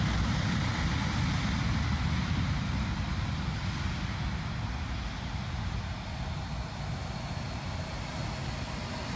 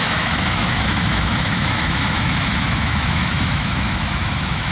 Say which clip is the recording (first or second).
first